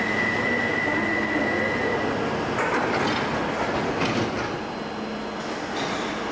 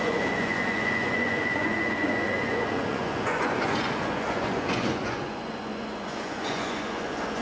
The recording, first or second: first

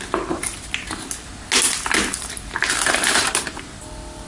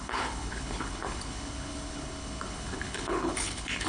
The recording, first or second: first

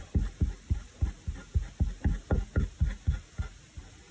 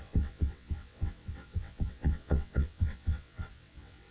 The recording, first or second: first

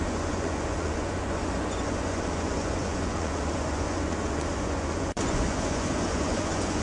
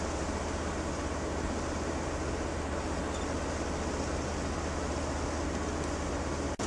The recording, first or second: second